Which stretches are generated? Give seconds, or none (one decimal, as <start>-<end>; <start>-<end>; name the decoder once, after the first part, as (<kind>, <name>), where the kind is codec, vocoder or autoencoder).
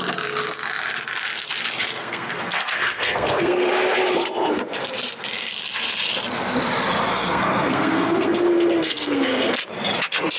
2.0-3.7 (codec, SNAC); 7.1-9.6